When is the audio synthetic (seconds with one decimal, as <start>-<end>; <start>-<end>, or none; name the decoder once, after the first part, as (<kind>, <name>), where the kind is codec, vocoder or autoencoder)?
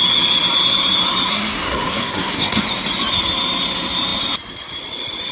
1.3-2.6 (codec, SNAC)